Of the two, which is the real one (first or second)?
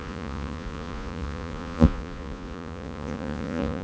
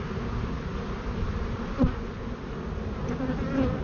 second